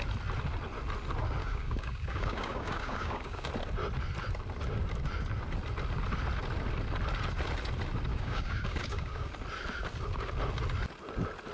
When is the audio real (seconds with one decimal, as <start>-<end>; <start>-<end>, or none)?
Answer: 0.0-1.4; 3.5-8.1; 9.3-11.5